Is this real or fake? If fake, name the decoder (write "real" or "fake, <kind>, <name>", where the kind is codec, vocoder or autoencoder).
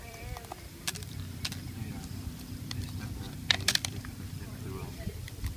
fake, vocoder, BigVGAN v2